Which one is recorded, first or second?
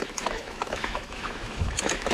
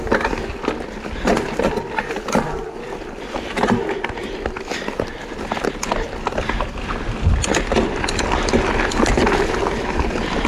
second